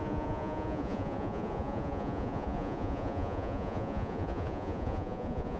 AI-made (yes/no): yes